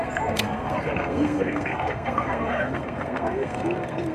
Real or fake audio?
fake